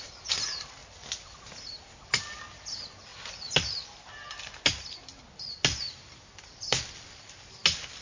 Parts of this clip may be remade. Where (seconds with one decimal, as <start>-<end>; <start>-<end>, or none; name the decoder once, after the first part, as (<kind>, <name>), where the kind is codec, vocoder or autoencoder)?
none